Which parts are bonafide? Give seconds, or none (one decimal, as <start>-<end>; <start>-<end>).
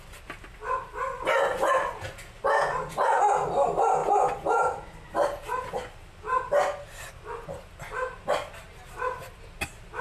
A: 0.0-10.0